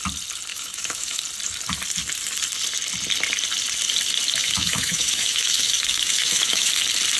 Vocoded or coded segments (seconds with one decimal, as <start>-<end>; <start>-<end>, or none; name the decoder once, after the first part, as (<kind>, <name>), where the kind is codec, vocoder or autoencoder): 0.5-1.2 (autoencoder, DAC-VAE); 4.4-6.7